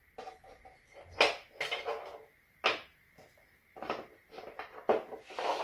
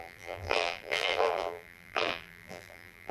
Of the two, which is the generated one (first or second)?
second